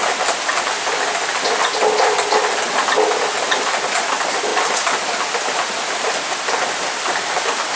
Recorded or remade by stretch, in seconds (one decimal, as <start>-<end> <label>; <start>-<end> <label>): 0.0-7.8 recorded